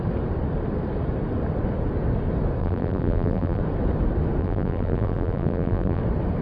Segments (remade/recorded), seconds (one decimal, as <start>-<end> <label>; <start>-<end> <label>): 0.0-2.6 recorded; 2.6-3.6 remade; 3.6-4.4 recorded; 4.4-6.0 remade; 6.0-6.4 recorded